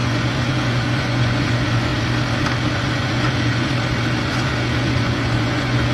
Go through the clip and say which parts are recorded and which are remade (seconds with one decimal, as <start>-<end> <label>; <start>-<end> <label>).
0.0-1.9 remade; 1.9-2.7 recorded; 2.7-3.7 remade; 3.7-4.2 recorded; 4.2-5.9 remade